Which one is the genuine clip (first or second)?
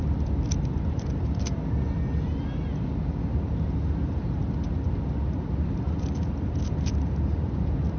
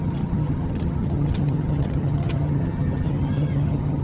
first